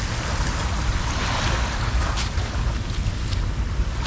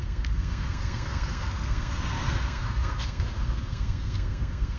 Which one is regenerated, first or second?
second